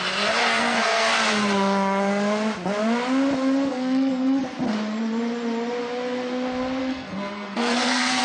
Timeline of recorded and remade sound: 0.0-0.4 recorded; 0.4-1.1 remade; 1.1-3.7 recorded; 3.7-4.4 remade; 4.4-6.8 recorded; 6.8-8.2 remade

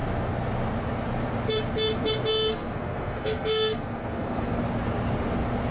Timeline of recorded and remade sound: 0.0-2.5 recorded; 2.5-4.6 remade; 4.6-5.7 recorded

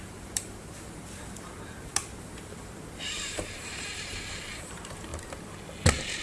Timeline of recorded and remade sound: 0.0-5.1 remade; 5.1-6.2 recorded